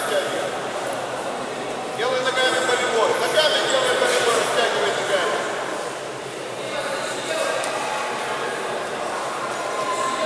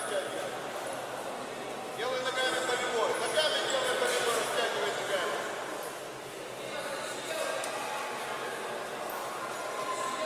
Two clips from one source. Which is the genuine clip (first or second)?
second